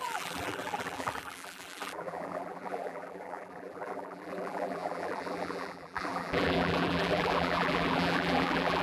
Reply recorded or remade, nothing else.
remade